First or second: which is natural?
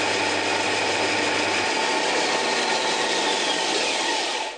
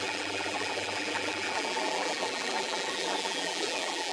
first